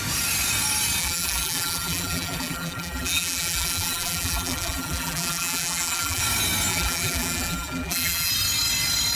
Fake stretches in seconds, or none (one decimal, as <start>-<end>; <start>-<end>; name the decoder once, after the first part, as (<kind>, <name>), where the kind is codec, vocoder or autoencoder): 1.0-6.2 (vocoder, BigVGAN v2); 6.7-8.3